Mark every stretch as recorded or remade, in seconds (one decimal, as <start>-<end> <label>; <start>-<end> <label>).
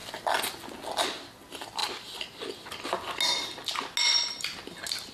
0.0-5.1 recorded